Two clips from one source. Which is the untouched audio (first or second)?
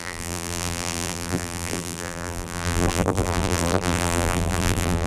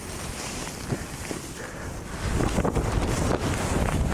second